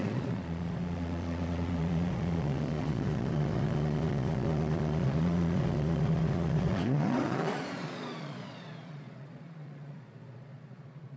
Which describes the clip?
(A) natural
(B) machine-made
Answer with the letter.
B